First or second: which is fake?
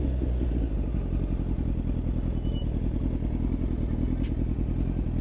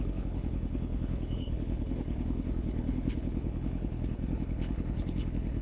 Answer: second